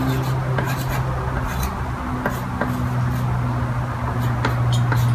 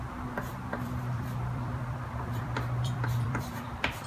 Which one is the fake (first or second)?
second